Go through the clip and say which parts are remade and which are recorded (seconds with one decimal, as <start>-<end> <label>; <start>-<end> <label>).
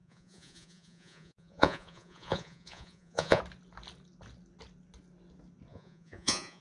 0.0-3.4 remade; 3.4-5.7 recorded; 5.7-6.6 remade